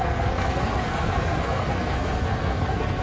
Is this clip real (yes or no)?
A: no